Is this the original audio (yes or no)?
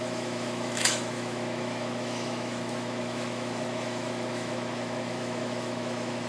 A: no